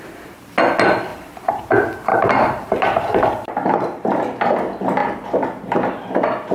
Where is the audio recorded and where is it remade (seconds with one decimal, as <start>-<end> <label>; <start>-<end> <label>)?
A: 0.0-1.1 recorded; 1.1-1.6 remade; 1.6-2.1 recorded; 2.1-4.2 remade; 4.2-6.5 recorded